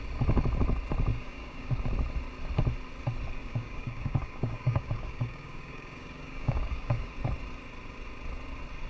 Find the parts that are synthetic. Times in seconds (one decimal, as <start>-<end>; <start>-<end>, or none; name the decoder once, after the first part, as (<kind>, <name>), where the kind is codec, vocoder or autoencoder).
1.1-1.8 (codec, DAC); 3.4-7.1